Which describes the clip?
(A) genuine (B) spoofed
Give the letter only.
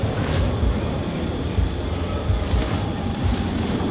B